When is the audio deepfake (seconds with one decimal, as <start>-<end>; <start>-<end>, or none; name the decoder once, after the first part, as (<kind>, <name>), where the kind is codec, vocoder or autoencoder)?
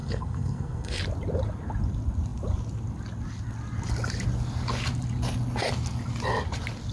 0.0-1.0 (codec, SNAC)